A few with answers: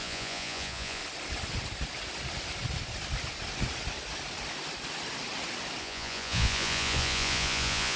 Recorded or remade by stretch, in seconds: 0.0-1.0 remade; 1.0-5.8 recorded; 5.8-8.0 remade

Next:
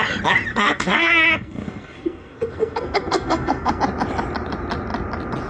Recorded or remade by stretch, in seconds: 0.0-0.5 recorded; 0.5-3.8 remade; 3.8-5.5 recorded